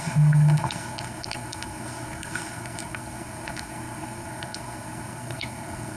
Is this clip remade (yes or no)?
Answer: yes